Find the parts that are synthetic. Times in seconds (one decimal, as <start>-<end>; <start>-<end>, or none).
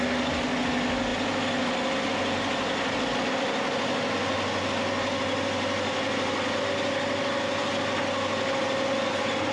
none